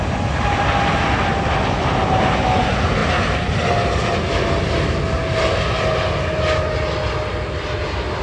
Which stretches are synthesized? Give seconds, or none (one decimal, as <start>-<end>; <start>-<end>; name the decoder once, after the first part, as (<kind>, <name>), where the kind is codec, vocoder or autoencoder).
none

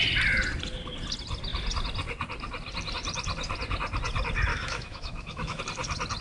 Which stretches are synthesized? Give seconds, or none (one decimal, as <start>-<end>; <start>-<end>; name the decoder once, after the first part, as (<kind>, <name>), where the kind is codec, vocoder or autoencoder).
4.5-5.6 (autoencoder, DAC-VAE)

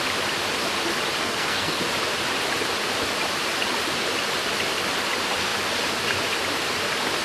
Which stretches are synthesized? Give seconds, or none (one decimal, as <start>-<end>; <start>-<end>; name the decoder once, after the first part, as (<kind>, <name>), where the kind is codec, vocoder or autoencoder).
1.2-1.8 (codec, SNAC)

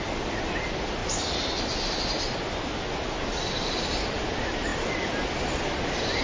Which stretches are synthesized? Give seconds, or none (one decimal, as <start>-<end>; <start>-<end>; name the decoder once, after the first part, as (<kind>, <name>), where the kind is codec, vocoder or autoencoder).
none